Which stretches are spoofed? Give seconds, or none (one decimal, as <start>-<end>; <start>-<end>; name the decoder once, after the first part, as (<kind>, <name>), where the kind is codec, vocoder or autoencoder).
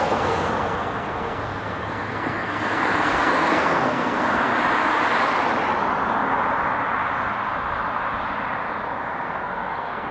0.0-4.5 (codec, SNAC); 9.1-10.1